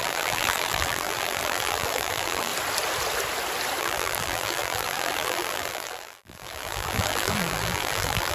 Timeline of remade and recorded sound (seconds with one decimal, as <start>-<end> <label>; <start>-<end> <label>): 0.0-2.5 remade; 2.5-3.8 recorded; 3.8-8.3 remade